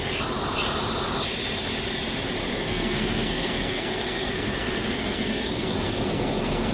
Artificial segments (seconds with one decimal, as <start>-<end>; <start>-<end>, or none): 2.4-6.7